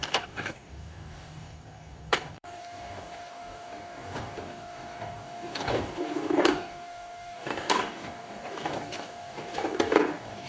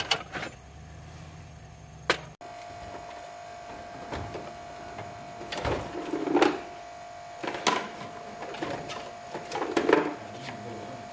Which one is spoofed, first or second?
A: first